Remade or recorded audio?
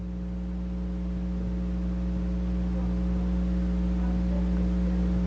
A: recorded